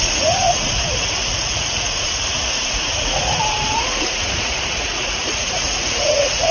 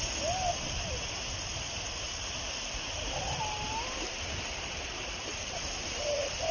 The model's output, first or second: first